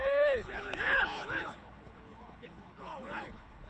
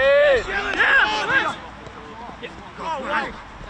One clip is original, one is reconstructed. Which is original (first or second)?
second